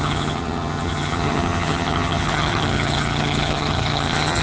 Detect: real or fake fake